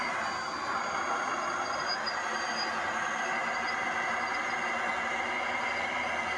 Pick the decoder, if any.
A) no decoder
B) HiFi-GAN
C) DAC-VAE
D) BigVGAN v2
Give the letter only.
A